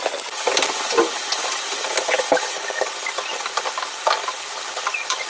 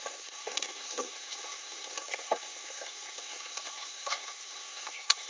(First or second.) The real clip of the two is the first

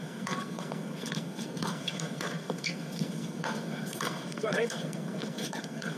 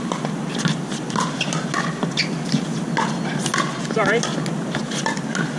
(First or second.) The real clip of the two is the second